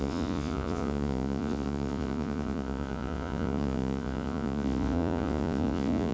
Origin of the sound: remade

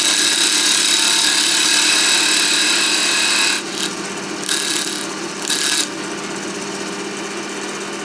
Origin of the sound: recorded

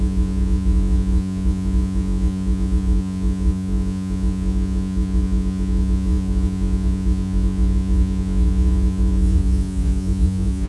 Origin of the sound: remade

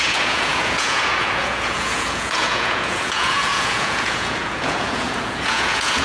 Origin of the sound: remade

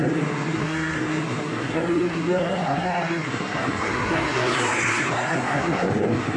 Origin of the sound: remade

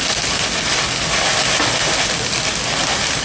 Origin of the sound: recorded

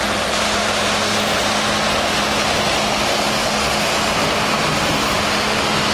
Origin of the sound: recorded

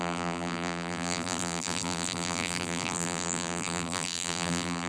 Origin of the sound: remade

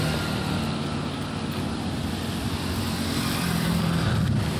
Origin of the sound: recorded